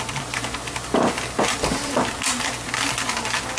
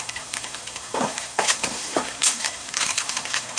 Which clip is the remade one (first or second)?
second